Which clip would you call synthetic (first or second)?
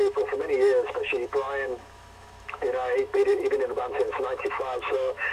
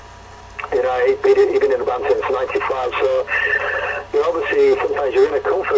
first